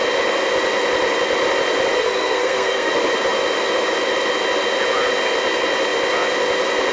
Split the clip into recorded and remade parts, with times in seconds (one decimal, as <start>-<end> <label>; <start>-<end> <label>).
0.0-1.9 recorded; 1.9-2.9 remade; 2.9-6.9 recorded